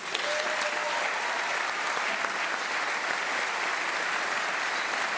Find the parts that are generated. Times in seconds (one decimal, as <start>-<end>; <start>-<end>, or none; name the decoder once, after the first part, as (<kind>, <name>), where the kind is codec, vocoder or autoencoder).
none